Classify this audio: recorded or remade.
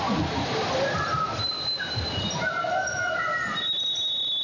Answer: recorded